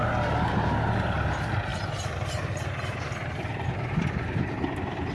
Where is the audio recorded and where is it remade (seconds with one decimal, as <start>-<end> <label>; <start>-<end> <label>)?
0.0-1.7 recorded; 1.7-5.1 remade